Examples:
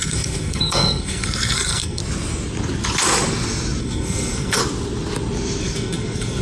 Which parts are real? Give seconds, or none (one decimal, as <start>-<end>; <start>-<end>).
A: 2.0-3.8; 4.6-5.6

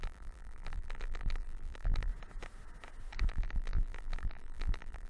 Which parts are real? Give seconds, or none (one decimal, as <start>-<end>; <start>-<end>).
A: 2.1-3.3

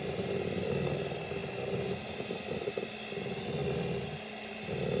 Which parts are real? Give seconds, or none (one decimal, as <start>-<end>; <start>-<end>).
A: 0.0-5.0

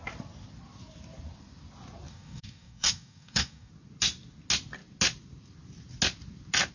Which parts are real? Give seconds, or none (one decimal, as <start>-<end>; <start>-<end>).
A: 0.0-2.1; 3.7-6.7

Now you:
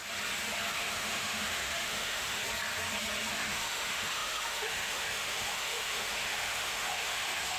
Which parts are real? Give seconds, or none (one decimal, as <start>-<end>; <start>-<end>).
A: 0.0-0.7; 2.4-3.3

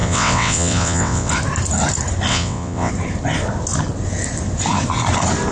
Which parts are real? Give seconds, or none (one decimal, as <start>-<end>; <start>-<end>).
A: 1.3-2.3; 2.9-5.5

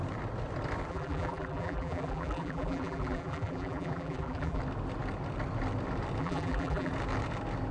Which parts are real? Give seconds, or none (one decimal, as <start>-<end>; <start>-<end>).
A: 0.0-0.9; 4.6-6.2; 6.9-7.7

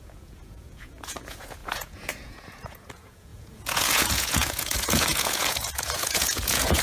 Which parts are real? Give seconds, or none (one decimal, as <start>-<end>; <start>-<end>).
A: none